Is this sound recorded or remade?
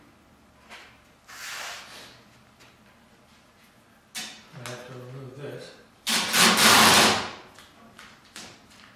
recorded